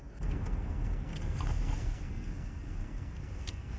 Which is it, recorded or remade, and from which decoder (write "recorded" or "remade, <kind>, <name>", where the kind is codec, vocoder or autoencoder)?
remade, codec, SNAC